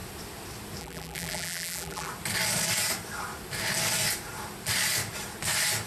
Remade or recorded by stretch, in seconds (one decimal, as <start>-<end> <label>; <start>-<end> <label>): 0.0-0.8 recorded; 0.8-2.1 remade; 2.1-5.9 recorded